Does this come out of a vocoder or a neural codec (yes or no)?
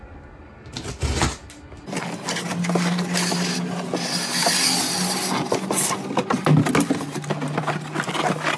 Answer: no